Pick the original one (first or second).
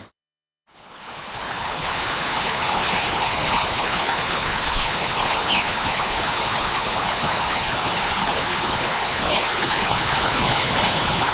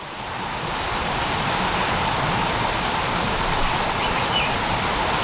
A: second